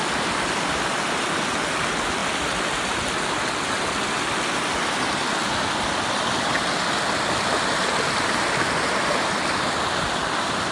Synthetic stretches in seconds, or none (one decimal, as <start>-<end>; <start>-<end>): none